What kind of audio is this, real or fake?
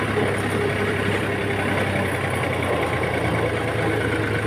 real